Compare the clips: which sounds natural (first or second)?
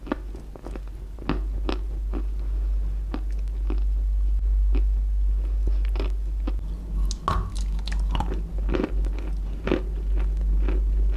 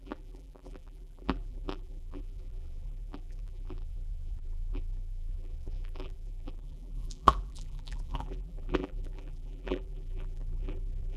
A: first